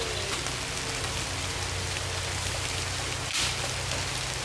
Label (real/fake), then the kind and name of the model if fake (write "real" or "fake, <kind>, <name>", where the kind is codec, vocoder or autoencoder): real